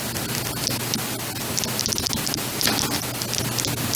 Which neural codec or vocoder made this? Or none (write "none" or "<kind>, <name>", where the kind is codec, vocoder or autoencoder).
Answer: none